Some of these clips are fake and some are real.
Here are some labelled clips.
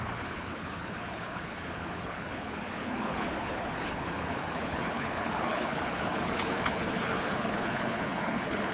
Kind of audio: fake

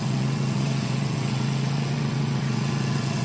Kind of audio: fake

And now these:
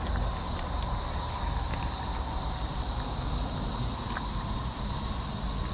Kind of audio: real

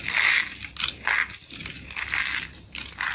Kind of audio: real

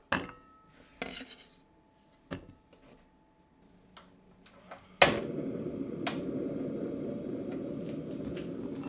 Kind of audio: real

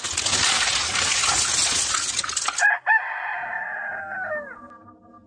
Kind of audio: real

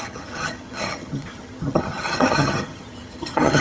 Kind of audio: fake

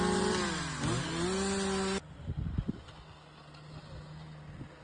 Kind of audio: real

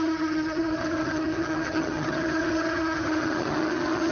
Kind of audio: fake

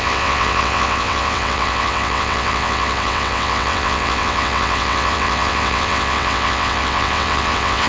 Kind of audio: fake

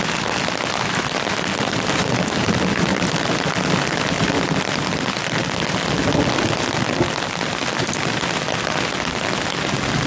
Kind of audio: real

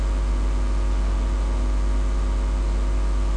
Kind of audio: real